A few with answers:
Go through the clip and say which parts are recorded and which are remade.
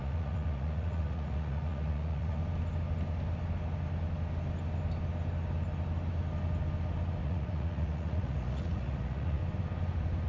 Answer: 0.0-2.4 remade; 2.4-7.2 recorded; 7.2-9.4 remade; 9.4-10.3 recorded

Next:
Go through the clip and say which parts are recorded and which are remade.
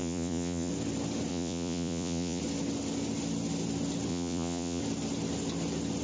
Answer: 0.0-0.7 remade; 0.7-1.3 recorded; 1.3-2.4 remade; 2.4-4.1 recorded; 4.1-4.8 remade; 4.8-6.0 recorded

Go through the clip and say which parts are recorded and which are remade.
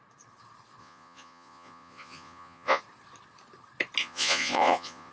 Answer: 0.0-0.8 recorded; 0.8-2.8 remade; 2.8-4.0 recorded; 4.0-5.1 remade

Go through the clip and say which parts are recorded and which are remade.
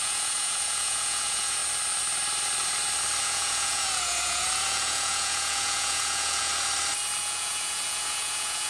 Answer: 0.0-1.6 remade; 1.6-3.2 recorded; 3.2-6.5 remade; 6.5-7.2 recorded; 7.2-8.7 remade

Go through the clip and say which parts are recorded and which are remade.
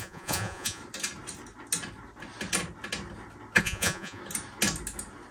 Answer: 0.0-0.8 remade; 0.8-3.6 recorded; 3.6-4.2 remade; 4.2-5.3 recorded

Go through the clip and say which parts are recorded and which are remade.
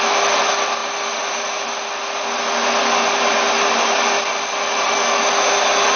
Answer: 0.0-6.0 recorded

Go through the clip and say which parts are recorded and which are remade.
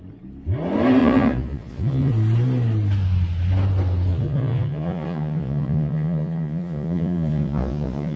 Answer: 0.0-1.0 recorded; 1.0-2.1 remade; 2.1-4.1 recorded; 4.1-8.2 remade